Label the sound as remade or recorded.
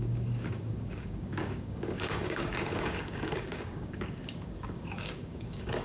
remade